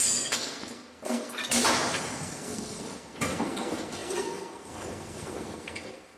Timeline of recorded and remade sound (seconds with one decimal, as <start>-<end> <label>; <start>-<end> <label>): 0.0-1.4 remade; 1.4-2.0 recorded; 2.0-6.2 remade